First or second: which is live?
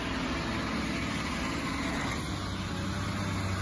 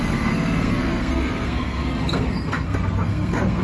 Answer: first